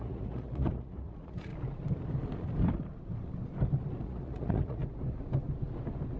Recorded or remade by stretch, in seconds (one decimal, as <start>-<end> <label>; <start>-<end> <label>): 0.0-1.5 remade; 1.5-4.0 recorded; 4.0-4.8 remade; 4.8-6.2 recorded

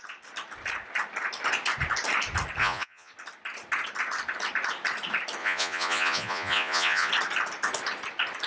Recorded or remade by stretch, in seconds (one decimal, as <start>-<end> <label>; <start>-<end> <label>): 0.0-2.6 recorded; 2.6-3.1 remade; 3.1-5.4 recorded; 5.4-7.1 remade; 7.1-8.5 recorded

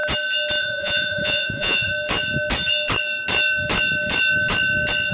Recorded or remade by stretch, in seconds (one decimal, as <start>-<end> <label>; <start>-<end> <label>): 0.0-0.6 recorded; 0.6-1.9 remade; 1.9-5.1 recorded

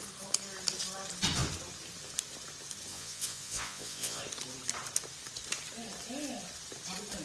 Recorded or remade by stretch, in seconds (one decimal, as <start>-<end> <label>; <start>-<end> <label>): 0.0-2.9 recorded; 2.9-4.2 remade; 4.2-7.2 recorded

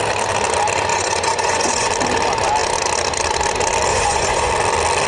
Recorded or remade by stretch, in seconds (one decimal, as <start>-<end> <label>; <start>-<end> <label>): 0.0-0.9 recorded; 0.9-1.9 remade; 1.9-3.9 recorded; 3.9-4.5 remade; 4.5-5.1 recorded

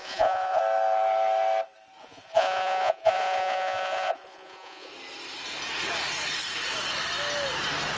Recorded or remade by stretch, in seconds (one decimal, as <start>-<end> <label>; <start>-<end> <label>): 0.0-0.6 remade; 0.6-2.0 recorded; 2.0-4.9 remade; 4.9-8.0 recorded